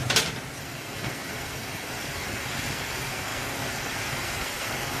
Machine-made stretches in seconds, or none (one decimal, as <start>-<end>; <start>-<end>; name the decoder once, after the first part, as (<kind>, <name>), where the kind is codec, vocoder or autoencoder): 0.6-5.0 (codec, SNAC)